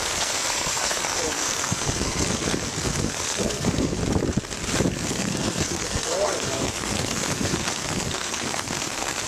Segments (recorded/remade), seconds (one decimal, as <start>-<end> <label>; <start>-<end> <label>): 0.0-4.0 remade; 4.0-4.9 recorded; 4.9-9.3 remade